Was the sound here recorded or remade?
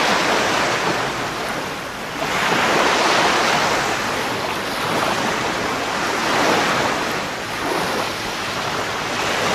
recorded